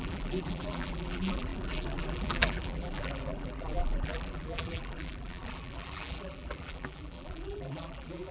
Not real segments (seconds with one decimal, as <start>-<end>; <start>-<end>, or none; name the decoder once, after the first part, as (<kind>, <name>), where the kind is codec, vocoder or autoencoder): 0.0-8.3 (vocoder, BigVGAN v2)